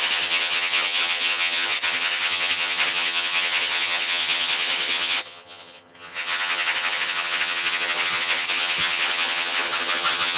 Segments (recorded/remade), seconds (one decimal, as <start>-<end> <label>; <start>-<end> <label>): 0.0-10.4 remade